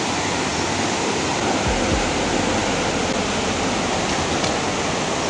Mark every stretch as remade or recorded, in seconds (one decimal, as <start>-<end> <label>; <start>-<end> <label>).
0.0-5.3 recorded